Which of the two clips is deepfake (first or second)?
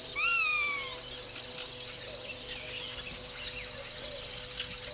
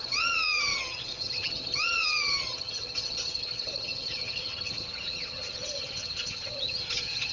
second